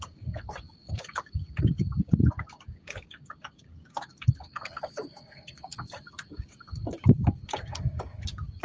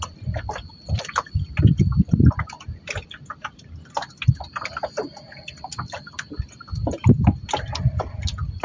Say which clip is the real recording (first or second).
second